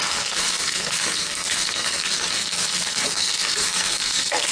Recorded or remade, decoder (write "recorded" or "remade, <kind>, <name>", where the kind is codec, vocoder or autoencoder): remade, codec, SNAC